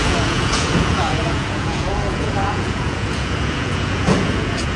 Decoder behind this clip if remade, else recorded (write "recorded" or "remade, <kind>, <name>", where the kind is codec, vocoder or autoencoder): remade, vocoder, Vocos